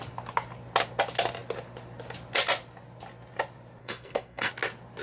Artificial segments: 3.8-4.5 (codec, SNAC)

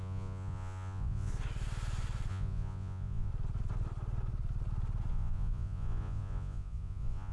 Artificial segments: 0.0-1.3 (vocoder, Vocos); 2.3-3.3; 5.1-7.3

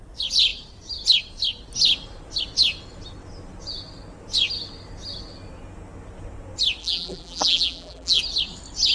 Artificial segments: 6.8-8.2 (vocoder, BigVGAN v2)

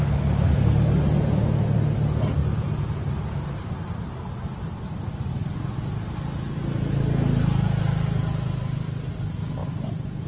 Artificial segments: 2.4-3.1 (vocoder, Vocos); 9.6-10.3

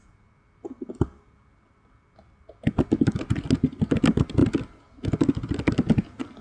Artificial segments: none

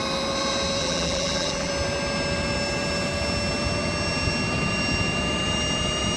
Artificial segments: 0.8-1.7 (vocoder, BigVGAN v2)

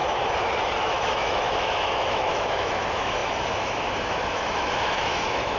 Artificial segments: 0.8-5.6 (autoencoder, DAC-VAE)

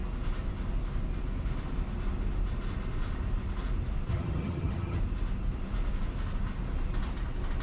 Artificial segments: 4.1-5.0 (vocoder, HiFi-GAN)